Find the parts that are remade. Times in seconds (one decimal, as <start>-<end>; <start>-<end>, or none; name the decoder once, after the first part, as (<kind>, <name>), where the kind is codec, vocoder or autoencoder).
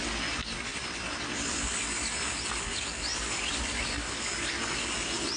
0.7-2.1 (vocoder, BigVGAN v2); 3.1-3.9